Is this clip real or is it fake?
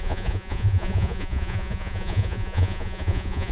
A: fake